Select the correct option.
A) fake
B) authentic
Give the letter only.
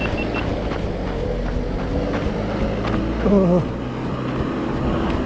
B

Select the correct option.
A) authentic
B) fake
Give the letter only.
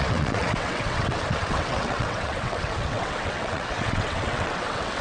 B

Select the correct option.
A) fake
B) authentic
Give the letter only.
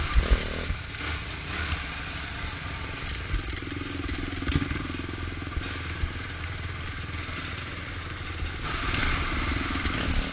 B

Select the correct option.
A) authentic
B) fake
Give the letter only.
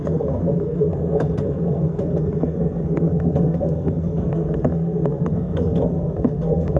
B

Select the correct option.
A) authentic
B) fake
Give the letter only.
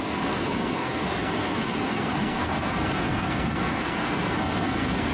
B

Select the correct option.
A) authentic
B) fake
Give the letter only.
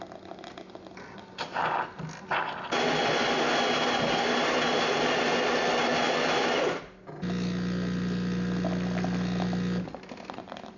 A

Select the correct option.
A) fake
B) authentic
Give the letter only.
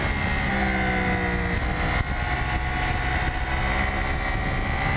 B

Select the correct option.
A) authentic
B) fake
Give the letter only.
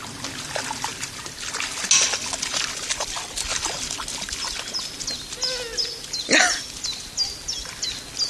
A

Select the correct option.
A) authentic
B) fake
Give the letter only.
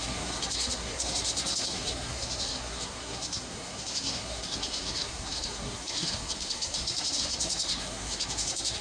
B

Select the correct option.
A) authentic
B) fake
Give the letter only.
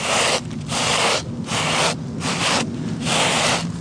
A